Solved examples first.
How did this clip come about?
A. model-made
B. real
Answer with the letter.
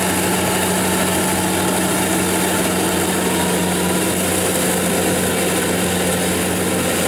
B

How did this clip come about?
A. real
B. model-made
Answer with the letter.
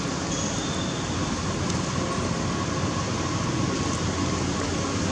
A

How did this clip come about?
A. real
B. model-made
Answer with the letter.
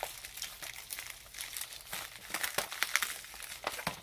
A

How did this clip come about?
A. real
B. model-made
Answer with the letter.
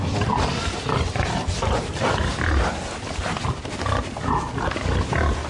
A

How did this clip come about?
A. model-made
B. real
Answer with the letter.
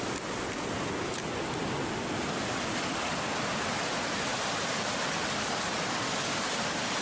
B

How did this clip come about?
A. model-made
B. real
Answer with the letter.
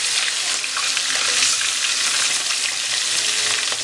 B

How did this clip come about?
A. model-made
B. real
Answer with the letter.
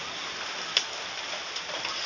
B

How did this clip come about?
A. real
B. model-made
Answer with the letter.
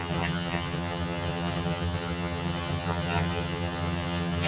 B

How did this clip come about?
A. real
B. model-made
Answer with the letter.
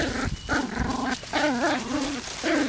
A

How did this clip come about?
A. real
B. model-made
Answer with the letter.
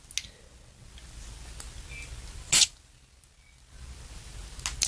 A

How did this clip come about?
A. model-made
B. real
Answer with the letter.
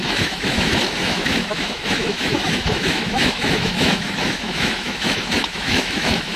A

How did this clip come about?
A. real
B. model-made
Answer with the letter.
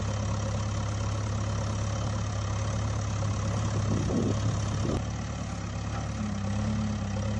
A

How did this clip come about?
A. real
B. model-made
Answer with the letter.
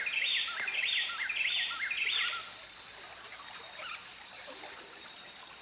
A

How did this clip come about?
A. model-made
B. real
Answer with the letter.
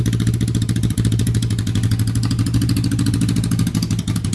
B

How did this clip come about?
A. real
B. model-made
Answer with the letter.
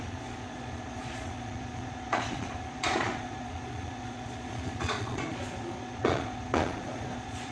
B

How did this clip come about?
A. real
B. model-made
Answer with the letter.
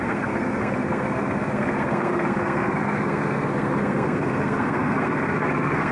B